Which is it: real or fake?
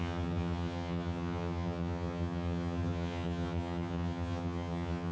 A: fake